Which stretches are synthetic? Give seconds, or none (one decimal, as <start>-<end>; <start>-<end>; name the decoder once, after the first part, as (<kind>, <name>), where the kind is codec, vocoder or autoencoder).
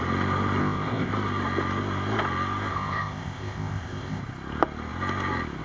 0.6-1.1 (codec, ZipCodec); 2.7-4.2